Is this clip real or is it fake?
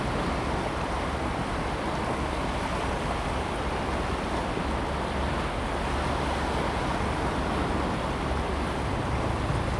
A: real